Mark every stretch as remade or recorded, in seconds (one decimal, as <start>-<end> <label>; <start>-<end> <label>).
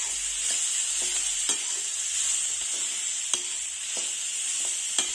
0.0-5.1 recorded